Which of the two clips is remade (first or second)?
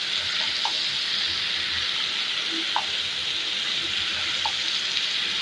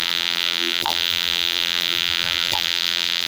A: second